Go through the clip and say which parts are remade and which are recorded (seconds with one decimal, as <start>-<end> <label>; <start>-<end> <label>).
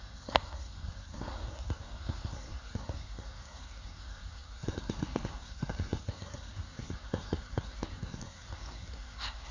0.0-9.5 remade